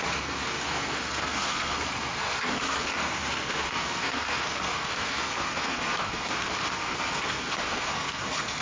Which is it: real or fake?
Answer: fake